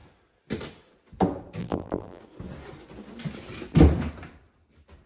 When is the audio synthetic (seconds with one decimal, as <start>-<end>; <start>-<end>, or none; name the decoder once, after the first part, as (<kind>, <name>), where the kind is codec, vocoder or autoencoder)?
1.6-2.2 (vocoder, BigVGAN v2)